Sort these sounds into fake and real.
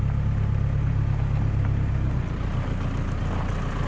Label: real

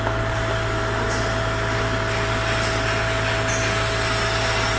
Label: real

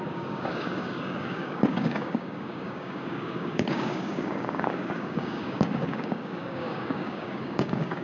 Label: fake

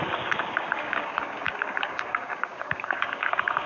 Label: fake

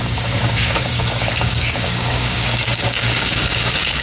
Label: fake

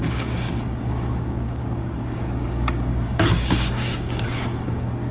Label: fake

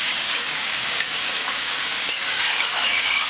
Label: fake